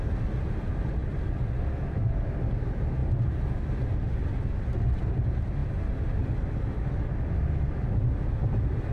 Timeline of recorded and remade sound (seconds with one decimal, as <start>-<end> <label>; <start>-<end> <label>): 0.0-1.0 recorded; 1.0-2.0 remade; 2.0-8.9 recorded